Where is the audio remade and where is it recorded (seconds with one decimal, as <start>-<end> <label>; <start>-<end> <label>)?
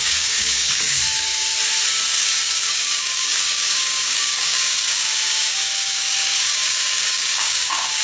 0.0-1.5 remade; 1.5-2.1 recorded; 2.1-8.0 remade